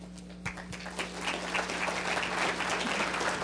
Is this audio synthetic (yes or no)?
no